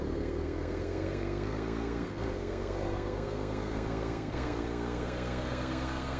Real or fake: fake